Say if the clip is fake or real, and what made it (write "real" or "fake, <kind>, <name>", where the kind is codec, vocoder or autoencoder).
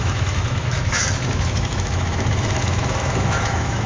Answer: fake, autoencoder, DAC-VAE